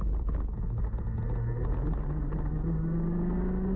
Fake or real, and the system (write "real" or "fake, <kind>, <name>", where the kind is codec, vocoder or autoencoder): real